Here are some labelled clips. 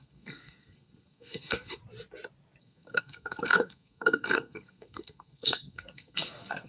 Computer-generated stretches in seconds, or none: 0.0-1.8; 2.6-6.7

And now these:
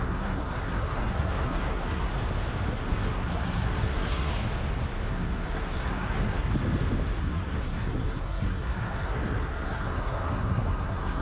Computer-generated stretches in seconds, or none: 0.0-2.1; 2.7-4.3; 5.1-6.5; 7.2-11.2

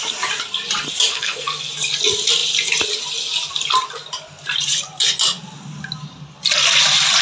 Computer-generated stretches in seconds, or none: 1.1-1.7

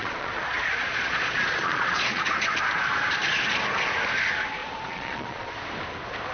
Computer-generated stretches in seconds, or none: 0.0-2.3; 4.6-5.5

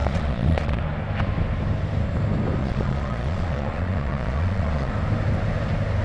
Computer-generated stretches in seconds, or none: 0.0-0.8; 2.6-4.9

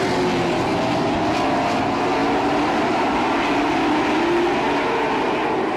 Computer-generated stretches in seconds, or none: none